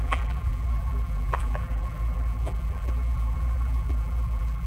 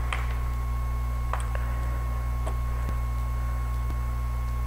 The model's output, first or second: first